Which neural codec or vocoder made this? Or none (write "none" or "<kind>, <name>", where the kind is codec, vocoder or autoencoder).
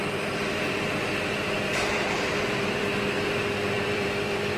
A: vocoder, BigVGAN v2